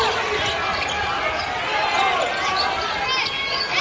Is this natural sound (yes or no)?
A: yes